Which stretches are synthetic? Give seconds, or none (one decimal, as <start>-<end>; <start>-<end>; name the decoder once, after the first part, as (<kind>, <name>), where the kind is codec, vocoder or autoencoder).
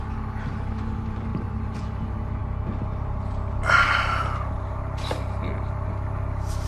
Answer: 1.3-1.8 (vocoder, BigVGAN v2)